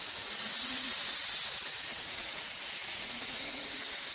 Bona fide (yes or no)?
no